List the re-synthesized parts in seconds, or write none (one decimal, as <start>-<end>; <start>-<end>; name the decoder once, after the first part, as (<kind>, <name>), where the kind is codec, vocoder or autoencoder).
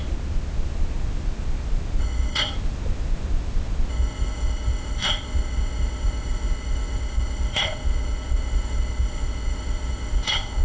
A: 2.0-2.5 (codec, ZipCodec); 3.9-10.6